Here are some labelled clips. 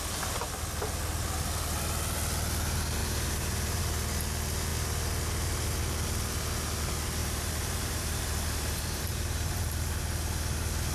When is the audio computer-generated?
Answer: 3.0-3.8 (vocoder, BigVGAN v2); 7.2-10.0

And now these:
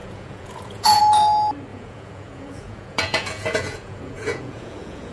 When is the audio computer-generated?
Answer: 0.0-1.0 (vocoder, Vocos); 1.7-5.1

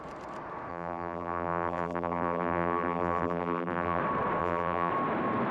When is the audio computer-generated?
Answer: 0.7-4.0 (vocoder, BigVGAN v2); 4.4-4.9